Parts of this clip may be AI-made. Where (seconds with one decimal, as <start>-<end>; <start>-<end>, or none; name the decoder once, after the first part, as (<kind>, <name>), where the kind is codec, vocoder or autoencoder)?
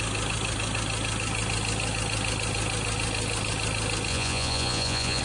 4.1-5.2 (vocoder, Vocos)